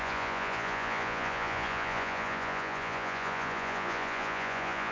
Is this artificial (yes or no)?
yes